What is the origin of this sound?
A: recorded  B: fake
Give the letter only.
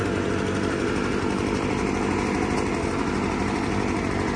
A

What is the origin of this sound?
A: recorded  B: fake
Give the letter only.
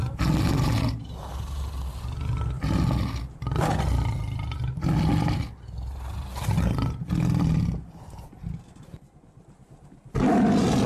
A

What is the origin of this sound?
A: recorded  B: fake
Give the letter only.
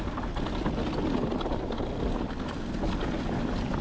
A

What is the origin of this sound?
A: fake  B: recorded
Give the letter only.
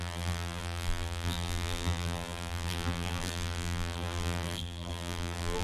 A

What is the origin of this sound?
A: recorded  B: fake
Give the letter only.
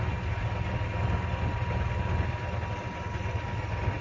A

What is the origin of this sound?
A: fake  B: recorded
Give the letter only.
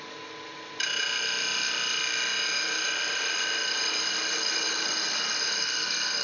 B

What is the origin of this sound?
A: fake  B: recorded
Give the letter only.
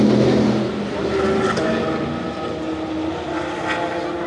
B